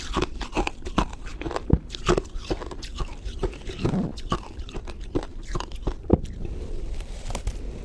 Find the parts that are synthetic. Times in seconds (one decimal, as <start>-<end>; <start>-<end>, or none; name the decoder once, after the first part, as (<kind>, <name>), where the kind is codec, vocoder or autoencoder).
2.9-7.3 (vocoder, BigVGAN v2)